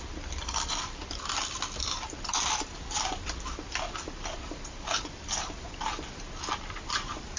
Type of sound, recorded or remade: remade